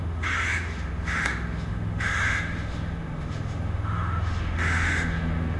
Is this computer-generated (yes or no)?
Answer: yes